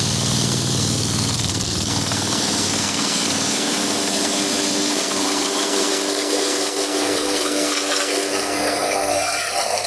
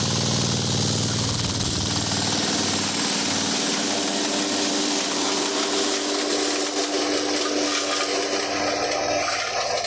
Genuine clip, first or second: second